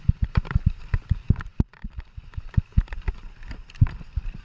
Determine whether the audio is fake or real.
fake